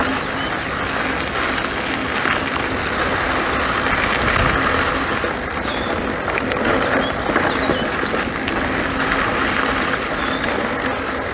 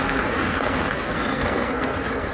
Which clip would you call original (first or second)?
first